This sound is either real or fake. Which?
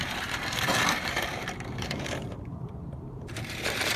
fake